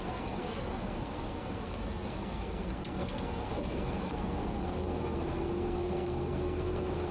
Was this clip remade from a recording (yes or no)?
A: yes